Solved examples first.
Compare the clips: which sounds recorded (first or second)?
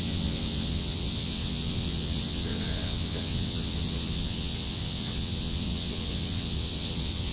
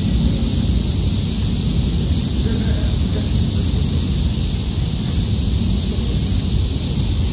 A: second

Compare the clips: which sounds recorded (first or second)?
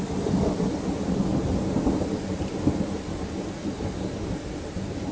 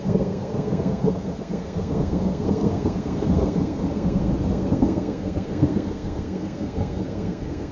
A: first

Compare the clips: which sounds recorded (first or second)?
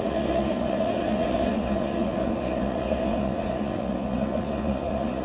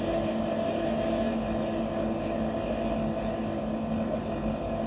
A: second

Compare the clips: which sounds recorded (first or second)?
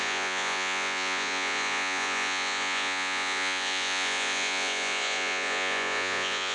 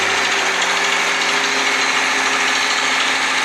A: second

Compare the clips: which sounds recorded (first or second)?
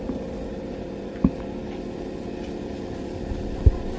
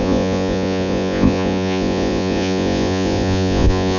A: first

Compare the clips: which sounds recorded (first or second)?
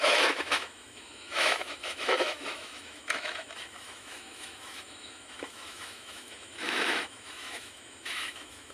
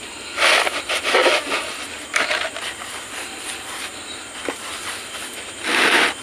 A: second